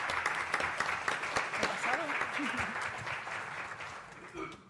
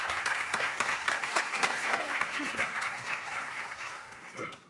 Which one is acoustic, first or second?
first